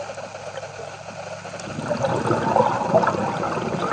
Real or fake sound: real